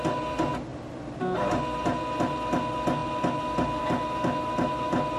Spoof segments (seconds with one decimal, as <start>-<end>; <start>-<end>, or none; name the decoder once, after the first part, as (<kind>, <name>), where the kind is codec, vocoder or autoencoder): none